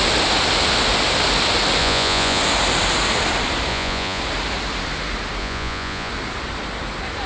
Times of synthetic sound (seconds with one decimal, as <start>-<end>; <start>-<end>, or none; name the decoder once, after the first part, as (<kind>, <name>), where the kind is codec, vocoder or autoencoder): 1.8-2.4 (vocoder, Vocos); 3.7-4.2; 5.4-6.1